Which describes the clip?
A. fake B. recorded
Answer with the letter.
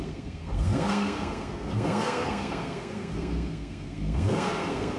A